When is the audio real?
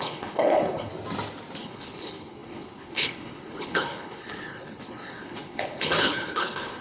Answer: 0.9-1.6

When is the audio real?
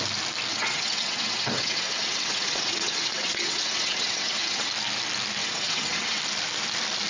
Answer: 0.0-0.5; 4.7-5.4; 6.2-7.1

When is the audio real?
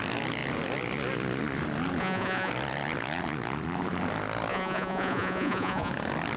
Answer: 0.0-2.0; 2.5-4.5; 5.9-6.4